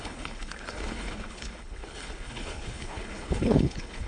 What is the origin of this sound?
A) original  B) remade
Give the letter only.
B